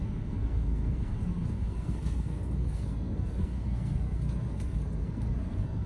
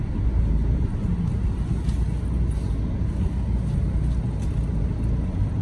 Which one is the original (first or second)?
second